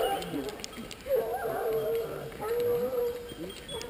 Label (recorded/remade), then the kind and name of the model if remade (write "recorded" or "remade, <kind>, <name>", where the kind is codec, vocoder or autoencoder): recorded